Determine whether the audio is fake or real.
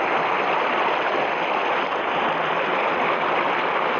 real